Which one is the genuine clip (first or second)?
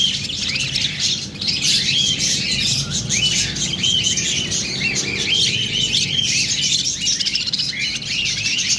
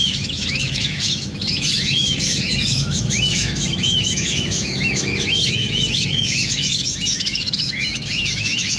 first